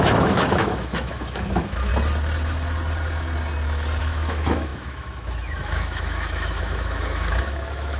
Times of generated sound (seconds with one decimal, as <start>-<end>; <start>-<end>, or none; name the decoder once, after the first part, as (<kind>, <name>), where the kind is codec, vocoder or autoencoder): 0.0-1.9 (autoencoder, DAC-VAE); 4.0-8.0

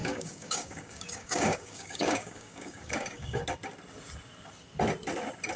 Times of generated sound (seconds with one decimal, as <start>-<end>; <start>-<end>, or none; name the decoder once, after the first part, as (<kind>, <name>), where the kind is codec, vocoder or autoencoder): 0.0-3.4 (codec, DAC)

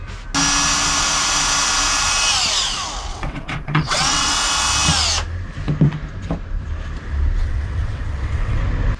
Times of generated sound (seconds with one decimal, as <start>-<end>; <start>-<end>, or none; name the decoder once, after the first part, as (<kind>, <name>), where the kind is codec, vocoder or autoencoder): 3.1-4.3 (vocoder, WaveNeXt); 7.4-8.6

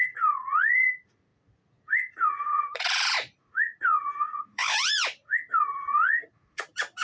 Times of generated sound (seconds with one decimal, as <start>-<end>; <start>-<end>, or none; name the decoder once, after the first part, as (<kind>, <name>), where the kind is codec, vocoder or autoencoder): 0.0-7.0 (vocoder, Vocos)

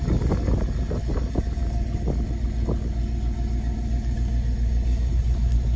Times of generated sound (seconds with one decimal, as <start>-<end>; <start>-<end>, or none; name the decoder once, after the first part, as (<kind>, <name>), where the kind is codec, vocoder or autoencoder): none